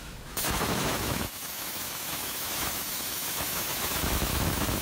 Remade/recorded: remade